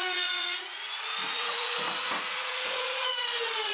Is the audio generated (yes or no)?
yes